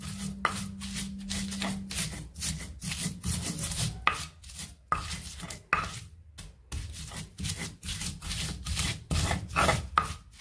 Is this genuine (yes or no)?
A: yes